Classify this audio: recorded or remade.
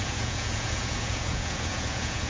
remade